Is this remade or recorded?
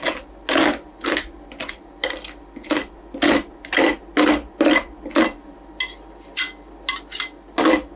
recorded